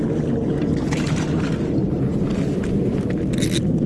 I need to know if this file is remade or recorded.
recorded